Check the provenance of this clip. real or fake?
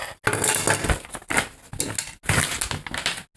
real